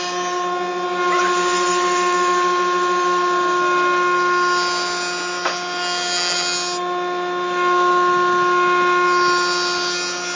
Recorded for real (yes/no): yes